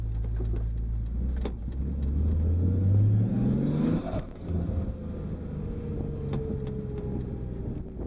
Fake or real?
real